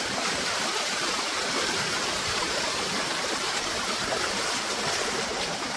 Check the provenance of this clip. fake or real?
fake